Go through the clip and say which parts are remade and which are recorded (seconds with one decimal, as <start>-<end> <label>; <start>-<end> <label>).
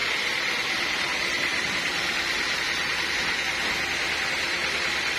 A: 0.0-5.2 recorded